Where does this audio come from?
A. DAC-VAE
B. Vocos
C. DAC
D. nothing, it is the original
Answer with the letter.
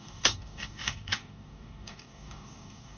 C